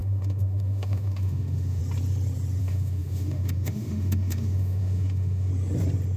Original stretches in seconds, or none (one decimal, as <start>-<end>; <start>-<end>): 1.8-2.6; 5.5-6.2